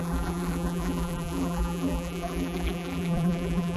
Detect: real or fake fake